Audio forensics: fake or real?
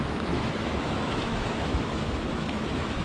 fake